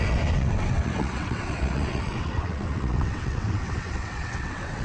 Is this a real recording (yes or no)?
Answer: no